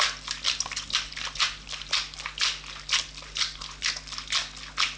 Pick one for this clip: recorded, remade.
recorded